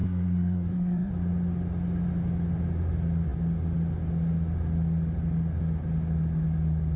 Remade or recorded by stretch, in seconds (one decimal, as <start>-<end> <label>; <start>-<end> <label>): 0.0-1.1 remade; 1.1-7.0 recorded